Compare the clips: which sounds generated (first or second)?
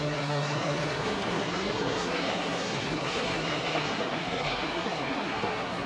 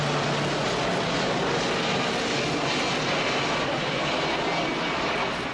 first